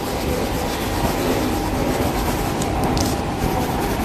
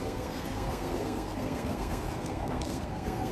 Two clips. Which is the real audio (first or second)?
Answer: first